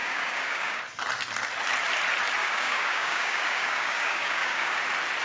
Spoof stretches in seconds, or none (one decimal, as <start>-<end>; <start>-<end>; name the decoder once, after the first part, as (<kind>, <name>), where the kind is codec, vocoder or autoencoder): 0.0-0.8 (codec, DAC); 2.4-4.8